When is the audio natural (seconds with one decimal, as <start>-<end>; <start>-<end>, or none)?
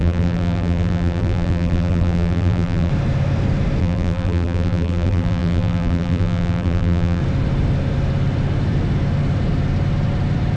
2.9-3.8; 7.2-10.6